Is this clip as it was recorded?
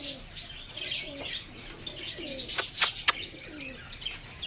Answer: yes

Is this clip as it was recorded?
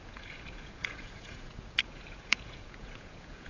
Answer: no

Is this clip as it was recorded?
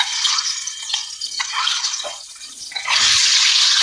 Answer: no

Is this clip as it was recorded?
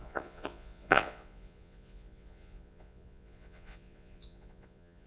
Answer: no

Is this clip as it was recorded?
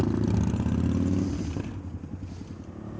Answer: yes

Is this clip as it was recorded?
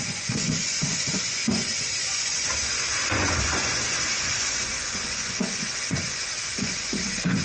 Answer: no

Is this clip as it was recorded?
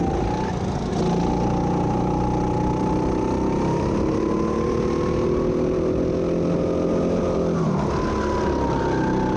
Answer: yes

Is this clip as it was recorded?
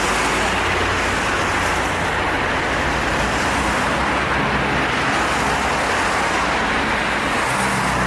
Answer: yes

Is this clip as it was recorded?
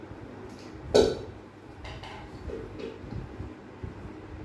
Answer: yes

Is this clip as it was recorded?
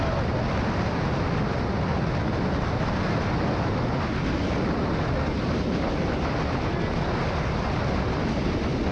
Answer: yes